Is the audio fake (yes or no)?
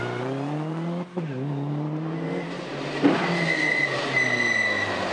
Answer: no